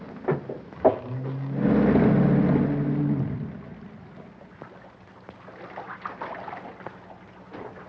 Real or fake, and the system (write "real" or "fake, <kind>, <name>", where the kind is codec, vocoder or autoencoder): real